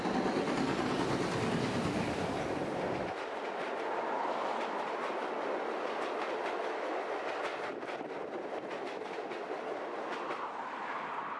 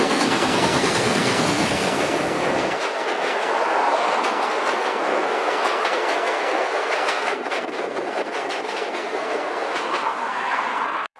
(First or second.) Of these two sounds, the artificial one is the second